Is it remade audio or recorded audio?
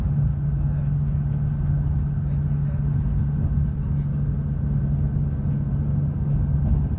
recorded